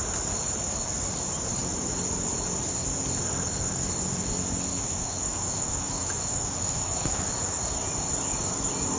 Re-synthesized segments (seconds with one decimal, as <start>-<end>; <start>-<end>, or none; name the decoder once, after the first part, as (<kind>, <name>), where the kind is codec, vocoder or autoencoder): 4.7-7.2 (autoencoder, DAC-VAE)